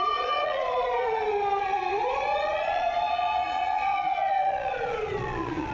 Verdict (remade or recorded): remade